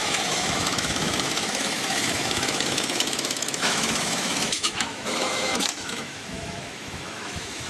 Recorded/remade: remade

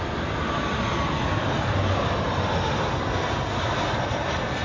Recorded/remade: recorded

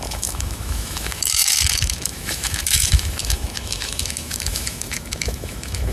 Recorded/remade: remade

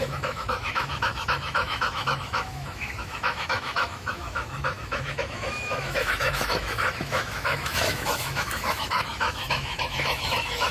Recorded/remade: remade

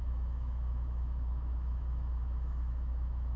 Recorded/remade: remade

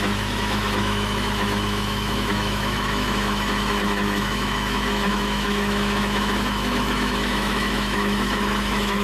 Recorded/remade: remade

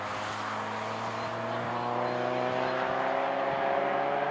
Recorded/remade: recorded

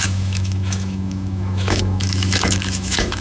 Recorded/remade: remade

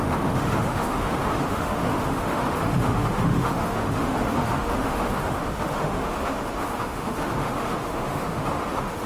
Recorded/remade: remade